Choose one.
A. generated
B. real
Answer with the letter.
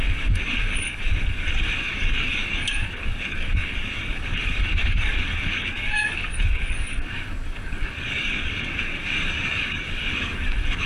A